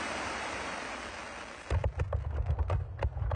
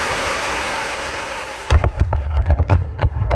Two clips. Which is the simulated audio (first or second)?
second